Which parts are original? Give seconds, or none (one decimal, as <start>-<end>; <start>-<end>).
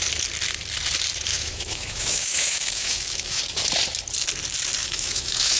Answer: 0.0-1.3; 3.4-4.8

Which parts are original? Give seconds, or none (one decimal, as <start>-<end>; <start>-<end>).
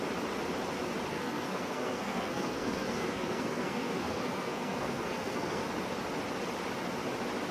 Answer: 0.0-1.1; 5.6-7.5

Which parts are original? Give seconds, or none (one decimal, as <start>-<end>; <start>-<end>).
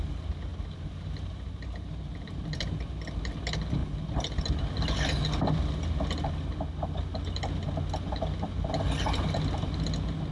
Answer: 0.0-0.5; 2.9-3.8; 4.5-10.3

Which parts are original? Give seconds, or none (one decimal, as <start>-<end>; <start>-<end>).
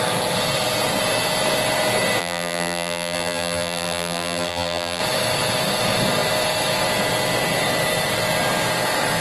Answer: 0.0-2.2; 5.0-9.2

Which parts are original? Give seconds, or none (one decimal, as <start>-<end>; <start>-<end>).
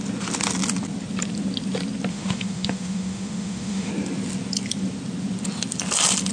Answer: 0.0-2.1; 3.9-6.3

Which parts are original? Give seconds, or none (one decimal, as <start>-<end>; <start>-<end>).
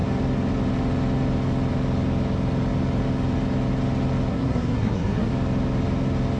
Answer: 0.0-4.3; 5.3-6.4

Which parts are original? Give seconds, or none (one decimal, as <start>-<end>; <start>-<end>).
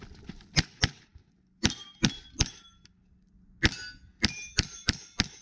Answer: 0.0-1.1; 2.5-4.1; 5.0-5.4